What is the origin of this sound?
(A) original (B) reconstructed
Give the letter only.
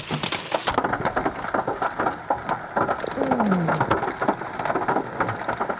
A